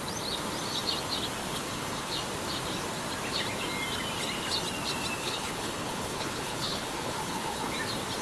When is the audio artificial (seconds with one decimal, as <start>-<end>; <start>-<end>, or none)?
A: 1.4-2.1; 5.2-7.7